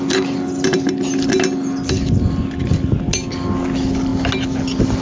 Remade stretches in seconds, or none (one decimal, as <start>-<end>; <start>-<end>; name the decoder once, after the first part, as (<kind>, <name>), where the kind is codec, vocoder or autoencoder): none